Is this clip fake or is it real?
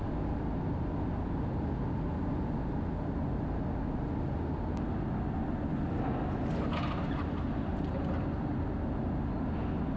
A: real